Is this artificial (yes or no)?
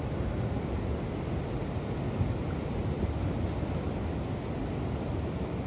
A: no